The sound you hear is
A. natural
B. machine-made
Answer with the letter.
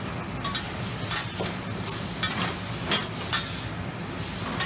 A